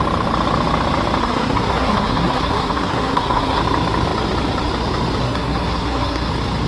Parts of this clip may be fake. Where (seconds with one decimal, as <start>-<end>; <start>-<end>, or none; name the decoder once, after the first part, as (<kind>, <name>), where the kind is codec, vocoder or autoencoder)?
1.2-3.6 (codec, SNAC); 5.2-6.3